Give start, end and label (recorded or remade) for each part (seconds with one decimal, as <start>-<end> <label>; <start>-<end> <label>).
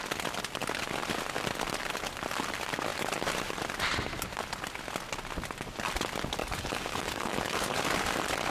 0.0-6.4 recorded; 6.4-7.9 remade; 7.9-8.5 recorded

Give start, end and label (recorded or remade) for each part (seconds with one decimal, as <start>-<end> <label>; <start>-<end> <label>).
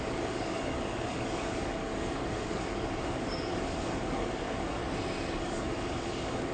0.0-4.8 remade; 4.8-5.4 recorded; 5.4-6.5 remade